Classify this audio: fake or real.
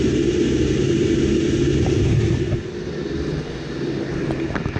real